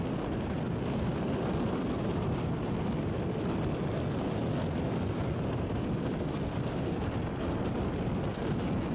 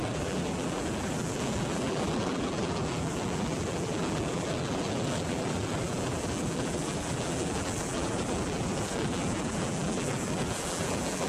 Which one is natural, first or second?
first